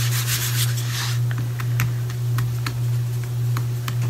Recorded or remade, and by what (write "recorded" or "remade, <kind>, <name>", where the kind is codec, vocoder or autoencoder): recorded